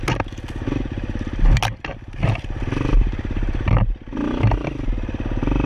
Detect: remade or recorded recorded